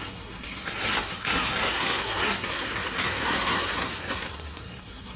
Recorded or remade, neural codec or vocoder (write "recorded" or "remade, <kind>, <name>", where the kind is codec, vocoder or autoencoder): remade, codec, SNAC